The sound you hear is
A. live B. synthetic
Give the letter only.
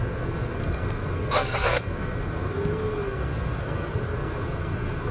B